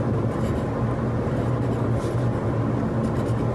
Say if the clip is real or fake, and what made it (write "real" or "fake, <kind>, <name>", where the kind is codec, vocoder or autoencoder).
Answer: real